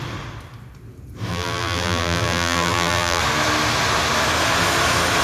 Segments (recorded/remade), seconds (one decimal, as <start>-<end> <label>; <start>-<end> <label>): 0.0-1.3 recorded; 1.3-3.2 remade; 3.2-5.2 recorded